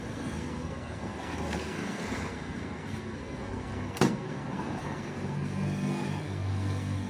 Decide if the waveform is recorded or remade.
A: remade